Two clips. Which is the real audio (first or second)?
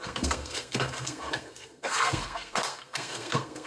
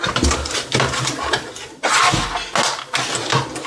second